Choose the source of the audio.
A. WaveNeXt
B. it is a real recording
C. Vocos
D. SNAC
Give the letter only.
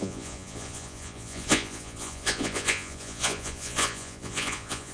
C